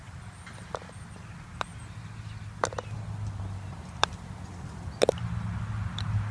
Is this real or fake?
real